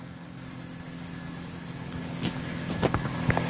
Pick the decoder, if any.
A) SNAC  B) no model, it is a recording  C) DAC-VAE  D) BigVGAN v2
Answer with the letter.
B